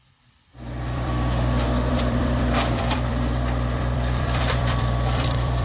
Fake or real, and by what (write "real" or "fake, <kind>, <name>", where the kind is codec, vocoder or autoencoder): fake, vocoder, BigVGAN v2